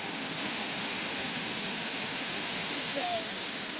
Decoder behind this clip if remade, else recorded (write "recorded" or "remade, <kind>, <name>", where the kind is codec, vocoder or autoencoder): remade, autoencoder, DAC-VAE